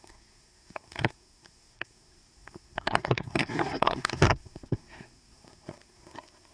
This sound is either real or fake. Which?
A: fake